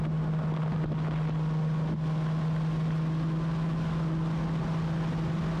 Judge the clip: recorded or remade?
recorded